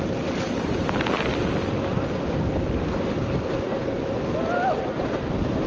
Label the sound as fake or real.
fake